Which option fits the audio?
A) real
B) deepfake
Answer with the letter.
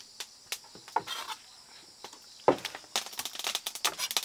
A